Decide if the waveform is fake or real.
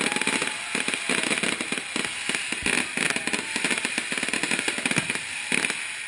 real